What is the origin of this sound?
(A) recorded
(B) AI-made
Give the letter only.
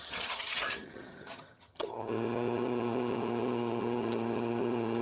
B